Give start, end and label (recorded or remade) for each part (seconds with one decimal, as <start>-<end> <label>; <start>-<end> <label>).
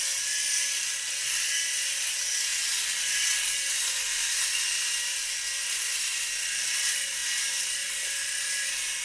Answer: 0.0-9.0 recorded